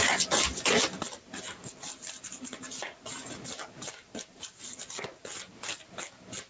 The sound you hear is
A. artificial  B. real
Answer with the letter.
B